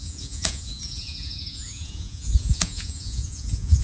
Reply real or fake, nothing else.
fake